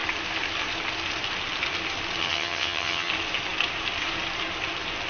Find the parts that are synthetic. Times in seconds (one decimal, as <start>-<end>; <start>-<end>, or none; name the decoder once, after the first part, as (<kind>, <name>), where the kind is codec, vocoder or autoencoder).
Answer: 2.2-3.1 (vocoder, HiFi-GAN)